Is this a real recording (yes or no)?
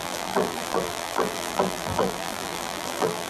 no